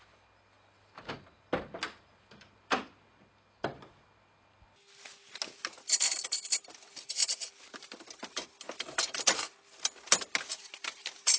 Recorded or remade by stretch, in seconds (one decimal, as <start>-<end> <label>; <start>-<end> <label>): 0.0-11.4 recorded

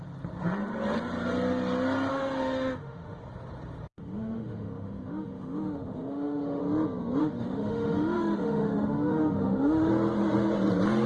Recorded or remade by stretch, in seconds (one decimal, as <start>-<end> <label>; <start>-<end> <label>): 0.0-2.1 recorded; 2.1-3.2 remade; 3.2-3.9 recorded; 3.9-6.6 remade; 6.6-7.2 recorded; 7.2-9.9 remade; 9.9-11.1 recorded

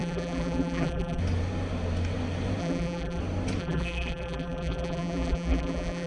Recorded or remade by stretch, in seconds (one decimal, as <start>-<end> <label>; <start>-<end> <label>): 0.0-1.2 remade; 1.2-2.6 recorded; 2.6-3.2 remade; 3.2-3.6 recorded; 3.6-6.1 remade

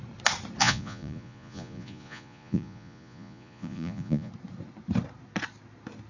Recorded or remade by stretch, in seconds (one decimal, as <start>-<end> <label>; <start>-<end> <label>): 0.0-0.6 recorded; 0.6-4.3 remade; 4.3-6.1 recorded

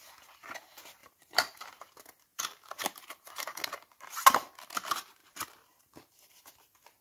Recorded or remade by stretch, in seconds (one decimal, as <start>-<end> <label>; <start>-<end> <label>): 0.0-1.0 recorded; 1.0-1.8 remade; 1.8-2.3 recorded; 2.3-3.6 remade; 3.6-5.2 recorded; 5.2-6.5 remade; 6.5-7.0 recorded